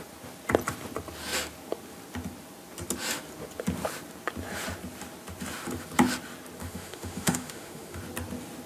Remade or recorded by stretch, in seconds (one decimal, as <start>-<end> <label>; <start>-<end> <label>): 0.0-6.6 recorded; 6.6-8.0 remade; 8.0-8.7 recorded